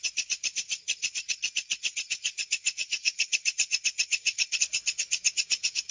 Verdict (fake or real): fake